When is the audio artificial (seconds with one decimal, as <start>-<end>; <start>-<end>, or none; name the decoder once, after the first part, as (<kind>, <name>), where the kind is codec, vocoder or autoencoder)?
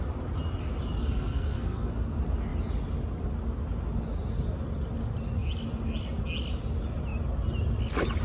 1.0-1.9 (codec, SNAC)